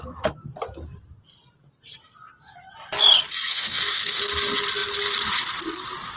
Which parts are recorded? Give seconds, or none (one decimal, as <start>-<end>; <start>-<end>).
0.0-3.5; 4.2-6.2

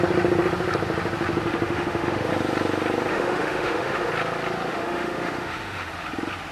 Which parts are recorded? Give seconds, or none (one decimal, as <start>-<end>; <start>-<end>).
0.0-1.4; 2.3-3.1; 4.1-4.7; 5.9-6.5

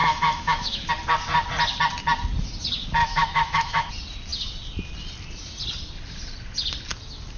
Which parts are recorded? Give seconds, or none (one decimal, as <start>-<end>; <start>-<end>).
0.9-3.0; 3.9-7.4

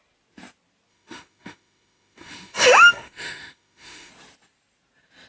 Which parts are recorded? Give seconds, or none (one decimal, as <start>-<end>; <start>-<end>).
0.0-0.9; 4.1-5.3